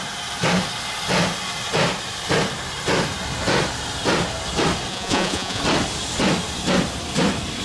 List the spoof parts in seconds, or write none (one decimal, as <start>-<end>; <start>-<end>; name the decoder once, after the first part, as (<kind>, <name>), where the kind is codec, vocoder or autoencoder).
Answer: 4.9-5.6 (vocoder, Vocos)